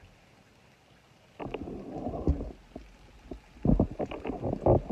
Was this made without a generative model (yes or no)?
yes